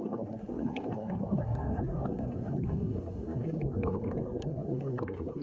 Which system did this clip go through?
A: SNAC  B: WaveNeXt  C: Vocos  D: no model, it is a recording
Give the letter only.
A